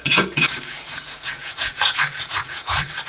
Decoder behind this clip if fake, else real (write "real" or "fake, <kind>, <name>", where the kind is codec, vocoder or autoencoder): fake, vocoder, Vocos